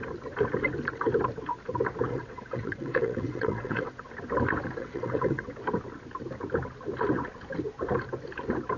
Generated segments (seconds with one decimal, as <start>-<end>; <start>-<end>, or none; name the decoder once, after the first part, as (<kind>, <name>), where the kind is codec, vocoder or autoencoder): 2.1-4.1 (vocoder, WaveNeXt); 4.8-5.5